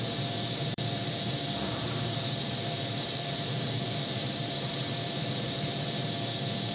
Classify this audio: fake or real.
fake